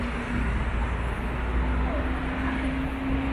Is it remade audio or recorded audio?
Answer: recorded